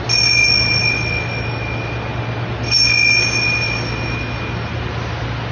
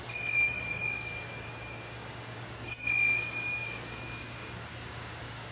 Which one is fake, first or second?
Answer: second